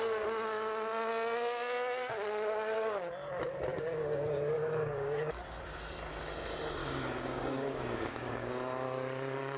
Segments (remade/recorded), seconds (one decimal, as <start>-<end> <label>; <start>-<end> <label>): 0.0-3.7 recorded; 3.7-5.3 remade; 5.3-6.8 recorded; 6.8-8.5 remade; 8.5-9.6 recorded